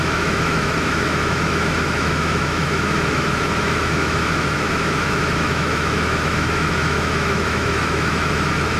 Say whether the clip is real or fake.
fake